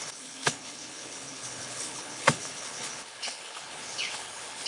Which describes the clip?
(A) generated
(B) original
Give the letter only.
A